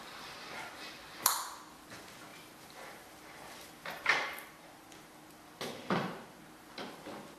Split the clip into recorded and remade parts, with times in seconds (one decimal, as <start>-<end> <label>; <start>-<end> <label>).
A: 0.0-2.3 recorded; 2.3-6.7 remade; 6.7-7.4 recorded